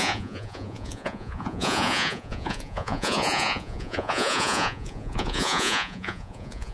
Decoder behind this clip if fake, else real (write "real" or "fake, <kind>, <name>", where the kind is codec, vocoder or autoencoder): fake, vocoder, Vocos